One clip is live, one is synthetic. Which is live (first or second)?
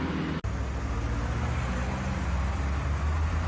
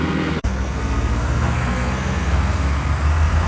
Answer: first